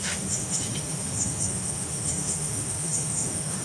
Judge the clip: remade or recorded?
remade